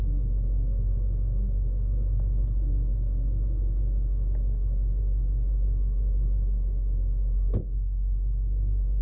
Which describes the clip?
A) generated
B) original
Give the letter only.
A